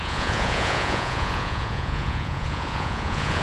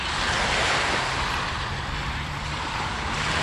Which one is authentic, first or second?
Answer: second